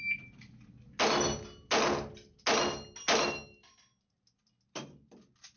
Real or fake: real